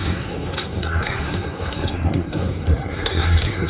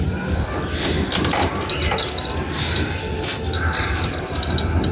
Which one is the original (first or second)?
second